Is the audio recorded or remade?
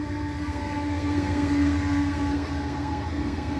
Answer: remade